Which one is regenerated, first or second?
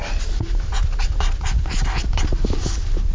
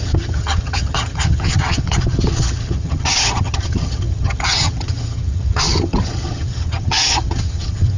second